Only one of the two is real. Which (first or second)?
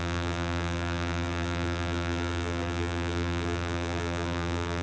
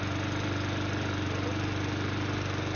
second